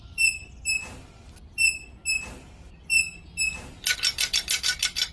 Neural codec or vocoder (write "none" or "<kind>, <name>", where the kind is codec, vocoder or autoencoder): none